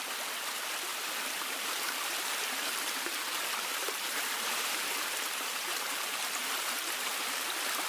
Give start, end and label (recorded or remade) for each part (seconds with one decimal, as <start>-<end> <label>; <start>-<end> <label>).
0.0-0.9 recorded; 0.9-2.7 remade; 2.7-3.8 recorded; 3.8-7.5 remade; 7.5-7.9 recorded